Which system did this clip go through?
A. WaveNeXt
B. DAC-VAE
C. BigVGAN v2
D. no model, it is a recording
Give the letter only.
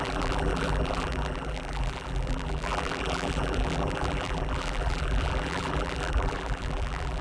C